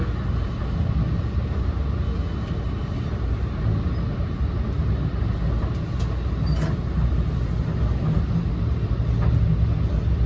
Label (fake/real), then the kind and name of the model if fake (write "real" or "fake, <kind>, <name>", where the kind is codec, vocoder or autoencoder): real